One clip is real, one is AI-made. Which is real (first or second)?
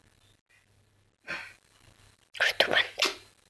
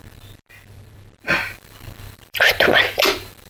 first